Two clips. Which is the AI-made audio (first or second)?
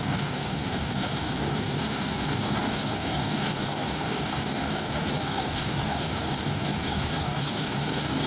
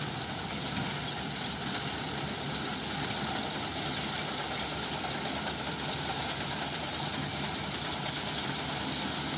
first